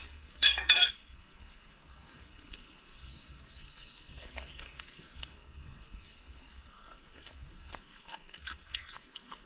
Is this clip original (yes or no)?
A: no